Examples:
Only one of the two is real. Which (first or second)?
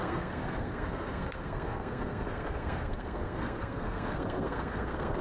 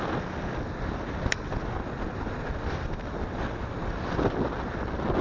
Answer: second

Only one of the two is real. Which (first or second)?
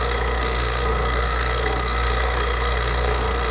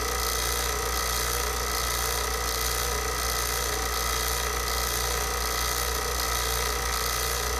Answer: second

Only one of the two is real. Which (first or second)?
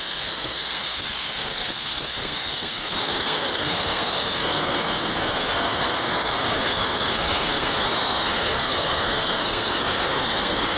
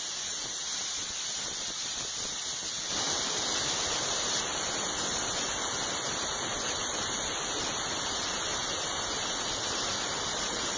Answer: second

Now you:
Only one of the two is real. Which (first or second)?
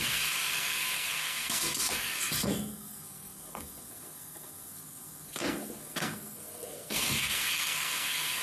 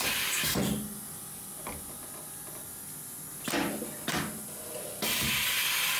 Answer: second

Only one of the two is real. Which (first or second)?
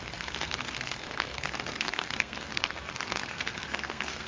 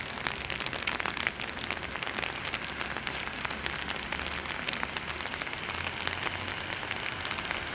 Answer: second